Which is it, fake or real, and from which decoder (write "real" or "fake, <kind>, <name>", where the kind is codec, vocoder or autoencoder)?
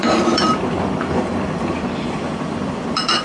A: fake, vocoder, BigVGAN v2